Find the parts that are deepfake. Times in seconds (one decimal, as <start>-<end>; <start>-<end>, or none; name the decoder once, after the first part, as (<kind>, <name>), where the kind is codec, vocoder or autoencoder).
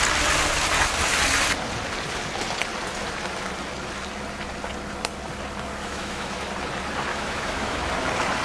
5.8-6.5 (autoencoder, DAC-VAE); 7.1-7.8